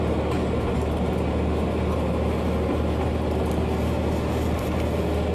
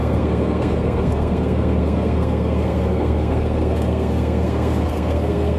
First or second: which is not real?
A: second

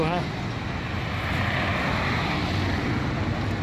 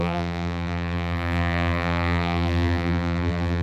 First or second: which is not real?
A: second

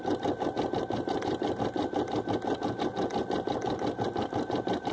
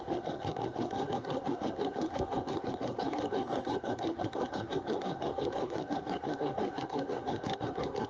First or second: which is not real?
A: second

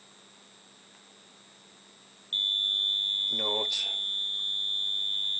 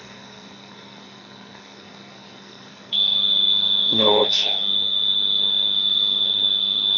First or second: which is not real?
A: second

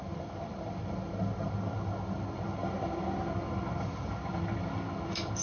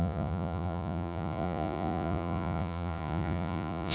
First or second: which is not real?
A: second